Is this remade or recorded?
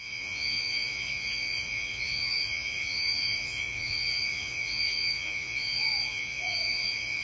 remade